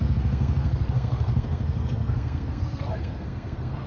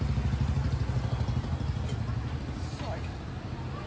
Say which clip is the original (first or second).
second